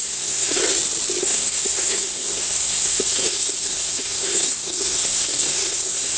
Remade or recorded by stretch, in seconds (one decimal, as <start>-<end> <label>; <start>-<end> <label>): 0.0-0.6 remade; 0.6-1.2 recorded; 1.2-6.2 remade